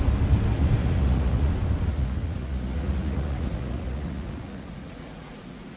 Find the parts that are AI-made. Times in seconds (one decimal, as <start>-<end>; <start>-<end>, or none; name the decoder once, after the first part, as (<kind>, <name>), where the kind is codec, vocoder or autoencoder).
0.8-1.5 (vocoder, Vocos); 1.9-5.8